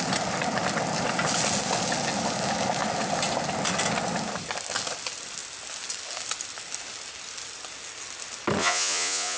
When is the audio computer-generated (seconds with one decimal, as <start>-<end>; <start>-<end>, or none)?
8.6-9.4